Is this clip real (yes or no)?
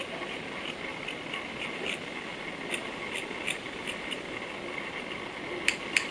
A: yes